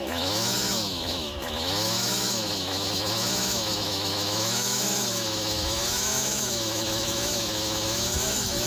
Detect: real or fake fake